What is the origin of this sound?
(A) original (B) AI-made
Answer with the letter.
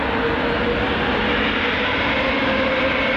A